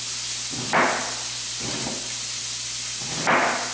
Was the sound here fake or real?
real